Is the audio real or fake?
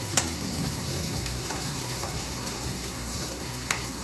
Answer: fake